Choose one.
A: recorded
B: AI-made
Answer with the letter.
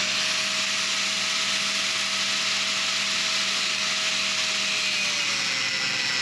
A